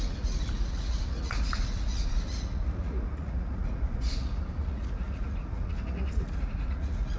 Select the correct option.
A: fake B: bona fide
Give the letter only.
A